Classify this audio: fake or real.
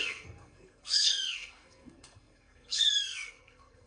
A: fake